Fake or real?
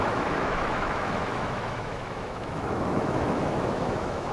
fake